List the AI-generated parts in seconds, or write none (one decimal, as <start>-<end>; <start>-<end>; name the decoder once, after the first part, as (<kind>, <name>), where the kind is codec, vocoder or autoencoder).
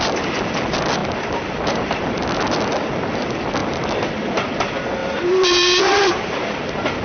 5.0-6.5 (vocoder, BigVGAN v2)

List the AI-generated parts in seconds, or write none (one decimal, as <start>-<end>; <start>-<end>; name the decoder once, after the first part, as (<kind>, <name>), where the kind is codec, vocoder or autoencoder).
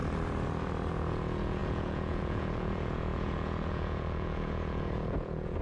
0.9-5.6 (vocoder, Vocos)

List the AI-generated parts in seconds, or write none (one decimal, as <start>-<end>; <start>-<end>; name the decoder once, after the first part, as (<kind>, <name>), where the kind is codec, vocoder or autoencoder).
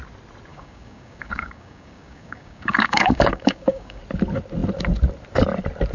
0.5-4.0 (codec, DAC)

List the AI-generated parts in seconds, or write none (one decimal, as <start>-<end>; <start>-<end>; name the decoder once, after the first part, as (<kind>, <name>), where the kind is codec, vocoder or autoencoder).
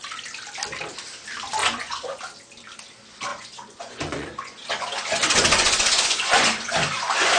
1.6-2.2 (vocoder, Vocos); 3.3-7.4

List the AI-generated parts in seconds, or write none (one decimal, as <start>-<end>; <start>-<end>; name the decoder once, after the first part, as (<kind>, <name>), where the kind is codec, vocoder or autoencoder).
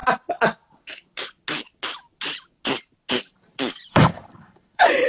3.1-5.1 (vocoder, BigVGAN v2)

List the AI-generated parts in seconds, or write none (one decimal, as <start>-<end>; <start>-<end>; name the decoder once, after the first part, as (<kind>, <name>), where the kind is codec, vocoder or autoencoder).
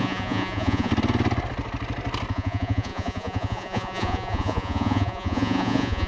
0.0-0.9 (vocoder, Vocos); 2.3-6.1